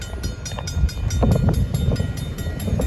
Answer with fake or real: real